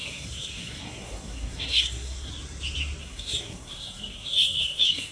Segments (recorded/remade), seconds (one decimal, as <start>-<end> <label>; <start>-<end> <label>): 0.0-2.3 remade; 2.3-3.0 recorded; 3.0-5.1 remade